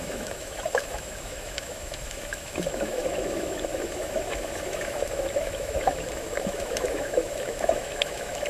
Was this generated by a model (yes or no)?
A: yes